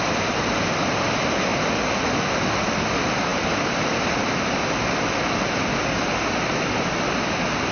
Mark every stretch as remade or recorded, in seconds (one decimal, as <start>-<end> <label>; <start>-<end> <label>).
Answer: 0.0-7.7 recorded